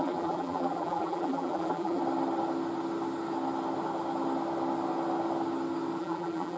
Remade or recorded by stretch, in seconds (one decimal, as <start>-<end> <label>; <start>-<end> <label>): 0.0-2.0 remade; 2.0-6.0 recorded; 6.0-6.6 remade